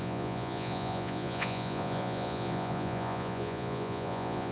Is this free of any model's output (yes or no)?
no